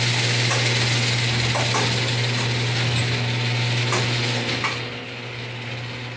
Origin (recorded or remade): recorded